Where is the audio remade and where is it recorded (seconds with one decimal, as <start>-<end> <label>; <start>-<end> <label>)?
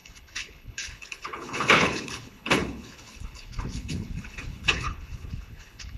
0.0-6.0 remade